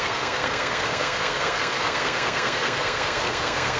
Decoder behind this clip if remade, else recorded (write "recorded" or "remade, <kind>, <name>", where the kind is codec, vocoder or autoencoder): remade, codec, SNAC